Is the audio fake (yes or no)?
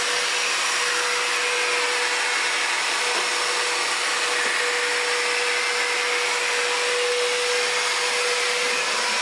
no